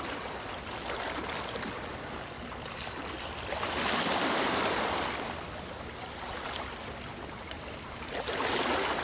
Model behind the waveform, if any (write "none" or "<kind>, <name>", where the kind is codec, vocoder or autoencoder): none